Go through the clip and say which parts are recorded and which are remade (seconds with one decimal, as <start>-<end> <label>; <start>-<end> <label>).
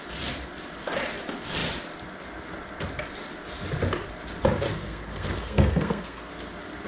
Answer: 0.0-4.7 recorded; 4.7-6.3 remade; 6.3-6.9 recorded